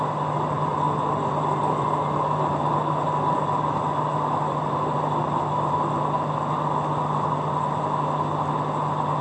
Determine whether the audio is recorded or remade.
recorded